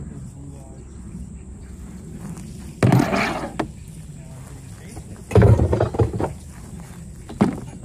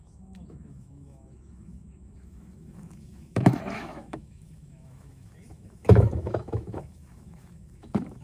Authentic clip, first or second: first